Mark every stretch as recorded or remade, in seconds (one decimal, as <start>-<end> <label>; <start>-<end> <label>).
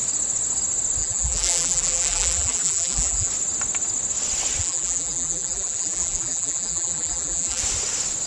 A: 0.0-1.0 recorded; 1.0-3.3 remade; 3.3-4.6 recorded; 4.6-7.6 remade; 7.6-8.3 recorded